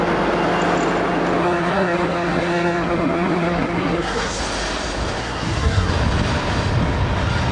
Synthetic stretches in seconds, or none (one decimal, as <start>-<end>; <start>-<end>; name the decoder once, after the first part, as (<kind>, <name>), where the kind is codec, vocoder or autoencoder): 1.4-4.4 (codec, SNAC); 5.2-5.9